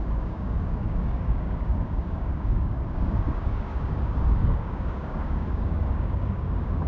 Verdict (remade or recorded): remade